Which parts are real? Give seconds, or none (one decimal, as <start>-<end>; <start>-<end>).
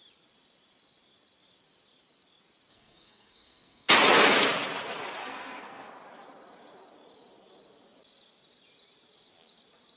0.0-2.7; 3.9-5.2; 5.9-10.0